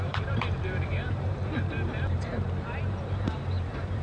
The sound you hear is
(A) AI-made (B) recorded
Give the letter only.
A